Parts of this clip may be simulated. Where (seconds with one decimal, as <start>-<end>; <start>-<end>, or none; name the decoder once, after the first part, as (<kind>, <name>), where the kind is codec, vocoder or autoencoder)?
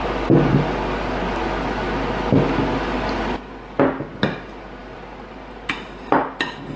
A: none